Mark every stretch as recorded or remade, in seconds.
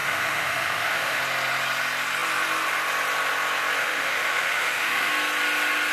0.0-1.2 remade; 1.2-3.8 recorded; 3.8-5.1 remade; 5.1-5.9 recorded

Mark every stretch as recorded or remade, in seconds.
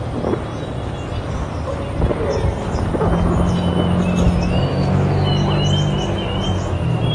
0.0-4.7 recorded; 4.7-5.3 remade; 5.3-7.1 recorded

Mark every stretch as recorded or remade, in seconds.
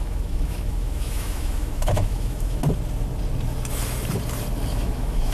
0.0-2.6 remade; 2.6-4.7 recorded; 4.7-5.3 remade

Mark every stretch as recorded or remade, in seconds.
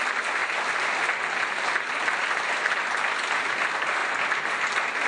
0.0-5.1 recorded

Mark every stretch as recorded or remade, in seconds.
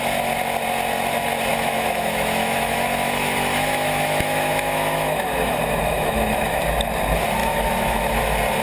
0.0-1.5 recorded; 1.5-6.6 remade; 6.6-7.4 recorded; 7.4-8.2 remade; 8.2-8.6 recorded